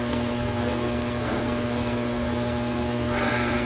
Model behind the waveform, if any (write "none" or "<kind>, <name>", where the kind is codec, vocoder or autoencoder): codec, SNAC